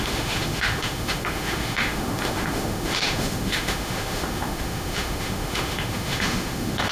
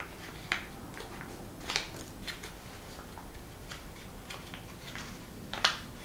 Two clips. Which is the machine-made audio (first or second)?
first